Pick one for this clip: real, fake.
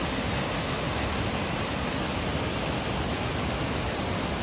real